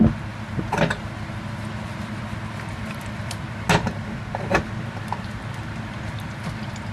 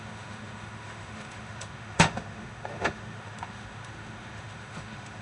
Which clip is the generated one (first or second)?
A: second